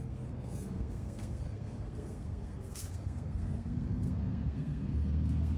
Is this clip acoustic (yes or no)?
no